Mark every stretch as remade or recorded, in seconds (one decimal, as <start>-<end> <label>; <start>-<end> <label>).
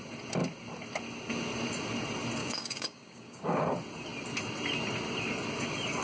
0.0-2.4 recorded; 2.4-3.6 remade; 3.6-6.0 recorded